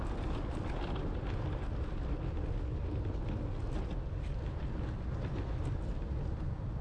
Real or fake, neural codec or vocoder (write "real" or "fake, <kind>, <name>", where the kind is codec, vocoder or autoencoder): real